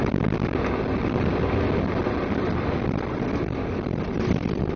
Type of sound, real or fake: real